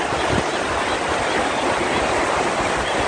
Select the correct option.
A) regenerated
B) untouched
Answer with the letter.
B